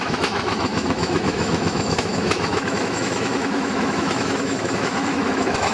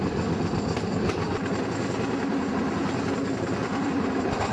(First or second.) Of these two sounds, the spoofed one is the first